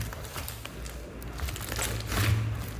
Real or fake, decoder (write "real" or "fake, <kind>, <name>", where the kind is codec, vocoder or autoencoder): real